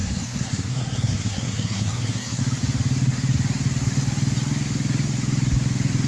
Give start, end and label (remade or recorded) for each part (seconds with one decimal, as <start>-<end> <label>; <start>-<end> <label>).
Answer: 0.0-2.4 remade; 2.4-6.1 recorded